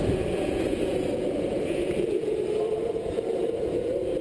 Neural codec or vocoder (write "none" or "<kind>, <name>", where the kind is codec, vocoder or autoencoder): vocoder, Vocos